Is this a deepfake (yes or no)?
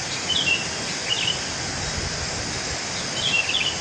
no